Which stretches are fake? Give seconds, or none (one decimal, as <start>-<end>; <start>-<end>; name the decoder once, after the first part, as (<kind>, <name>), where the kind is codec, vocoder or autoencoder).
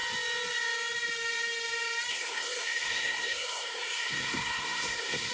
2.1-5.3 (codec, SNAC)